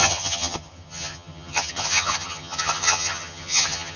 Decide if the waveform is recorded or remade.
remade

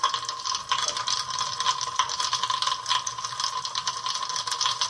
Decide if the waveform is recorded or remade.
recorded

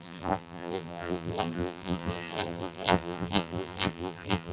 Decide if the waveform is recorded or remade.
remade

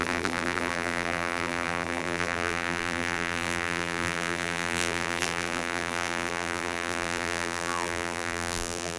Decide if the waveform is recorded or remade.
remade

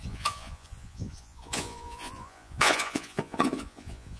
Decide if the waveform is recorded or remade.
remade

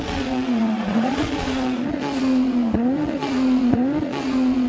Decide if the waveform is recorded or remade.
remade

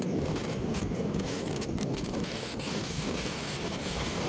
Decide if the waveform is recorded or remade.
remade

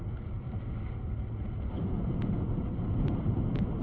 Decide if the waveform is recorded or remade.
recorded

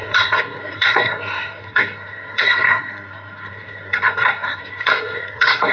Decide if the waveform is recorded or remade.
remade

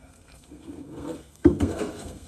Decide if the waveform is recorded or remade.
remade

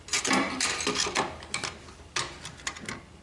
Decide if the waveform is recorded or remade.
recorded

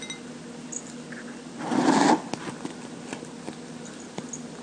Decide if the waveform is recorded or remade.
recorded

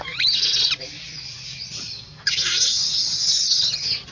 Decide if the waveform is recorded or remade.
recorded